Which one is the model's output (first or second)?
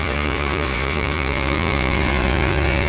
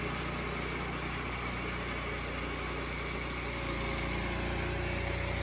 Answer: first